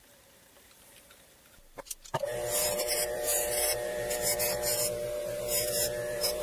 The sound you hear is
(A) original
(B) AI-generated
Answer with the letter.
B